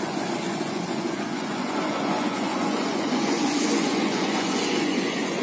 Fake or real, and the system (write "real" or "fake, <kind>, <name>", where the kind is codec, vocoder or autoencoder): fake, vocoder, Vocos